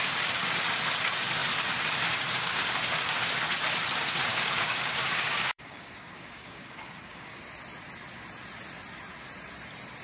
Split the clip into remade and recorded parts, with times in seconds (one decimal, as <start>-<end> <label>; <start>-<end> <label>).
0.0-4.3 recorded; 4.3-7.4 remade; 7.4-10.0 recorded